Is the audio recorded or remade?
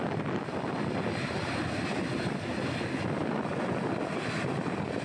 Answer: recorded